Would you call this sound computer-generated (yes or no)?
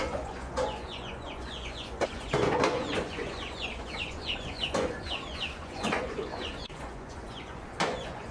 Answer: yes